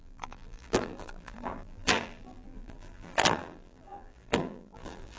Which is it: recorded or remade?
remade